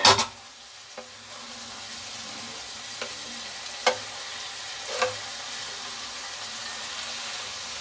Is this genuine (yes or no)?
yes